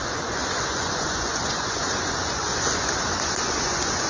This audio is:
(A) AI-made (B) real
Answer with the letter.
A